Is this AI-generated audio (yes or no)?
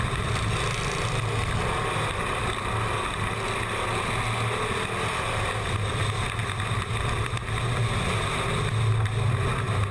no